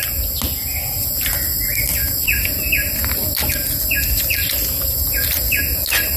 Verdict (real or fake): real